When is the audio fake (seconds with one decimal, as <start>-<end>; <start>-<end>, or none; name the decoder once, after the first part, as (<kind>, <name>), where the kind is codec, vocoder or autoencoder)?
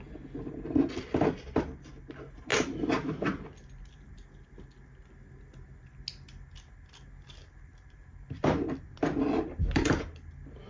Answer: 2.5-4.1 (vocoder, BigVGAN v2); 7.4-10.7